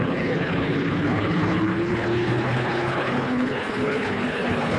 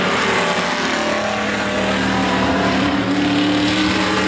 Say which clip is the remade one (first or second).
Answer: first